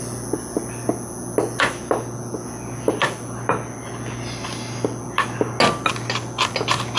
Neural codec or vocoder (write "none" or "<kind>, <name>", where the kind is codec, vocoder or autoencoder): none